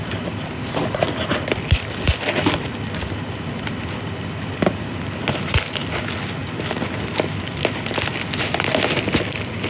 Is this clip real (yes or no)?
yes